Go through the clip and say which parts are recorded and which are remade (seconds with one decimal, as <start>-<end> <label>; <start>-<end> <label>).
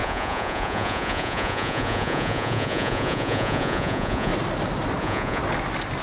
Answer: 0.0-4.3 remade; 4.3-5.0 recorded; 5.0-5.4 remade; 5.4-6.0 recorded